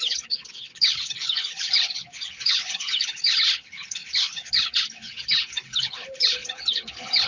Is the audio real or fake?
fake